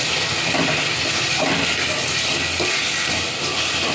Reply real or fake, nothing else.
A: real